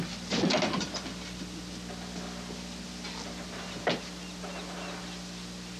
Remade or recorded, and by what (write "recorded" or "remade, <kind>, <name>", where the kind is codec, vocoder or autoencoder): recorded